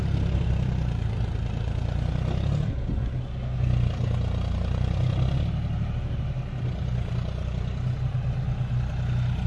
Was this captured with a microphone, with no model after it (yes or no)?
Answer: yes